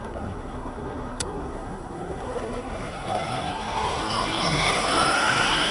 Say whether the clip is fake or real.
fake